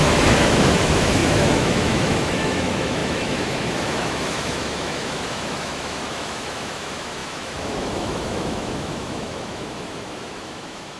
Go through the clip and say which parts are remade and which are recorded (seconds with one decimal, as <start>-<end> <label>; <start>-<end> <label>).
0.0-11.0 remade